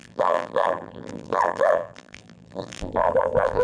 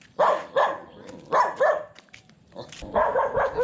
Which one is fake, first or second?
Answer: first